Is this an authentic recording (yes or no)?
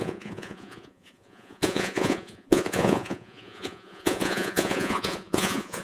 no